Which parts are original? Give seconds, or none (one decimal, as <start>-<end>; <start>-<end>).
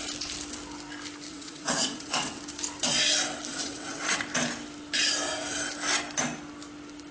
0.0-1.3; 2.4-3.5; 4.2-7.1